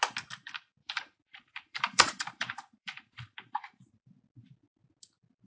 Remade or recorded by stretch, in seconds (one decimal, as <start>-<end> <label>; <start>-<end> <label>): 0.0-0.8 recorded; 0.8-4.1 remade; 4.1-5.5 recorded